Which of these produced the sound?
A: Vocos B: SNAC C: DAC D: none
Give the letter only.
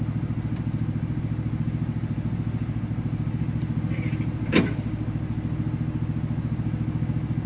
D